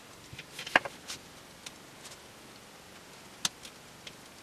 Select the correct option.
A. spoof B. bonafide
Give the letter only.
B